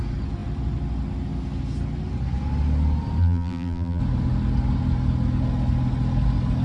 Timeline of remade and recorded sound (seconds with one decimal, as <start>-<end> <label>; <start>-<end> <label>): 0.0-3.2 recorded; 3.2-4.0 remade; 4.0-6.6 recorded